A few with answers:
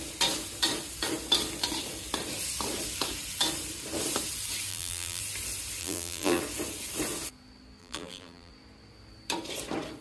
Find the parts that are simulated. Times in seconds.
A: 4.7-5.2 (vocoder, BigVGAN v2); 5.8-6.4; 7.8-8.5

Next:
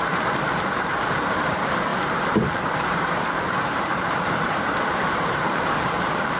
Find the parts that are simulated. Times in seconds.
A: 0.0-6.4 (vocoder, BigVGAN v2)